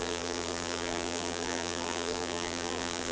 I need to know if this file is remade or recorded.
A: remade